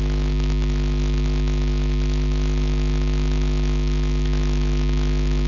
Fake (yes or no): no